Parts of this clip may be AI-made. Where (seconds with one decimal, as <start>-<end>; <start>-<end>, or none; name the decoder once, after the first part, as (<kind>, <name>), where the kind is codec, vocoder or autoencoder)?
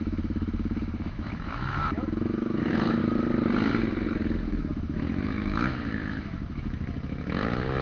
0.0-3.0 (autoencoder, DAC-VAE); 4.4-7.8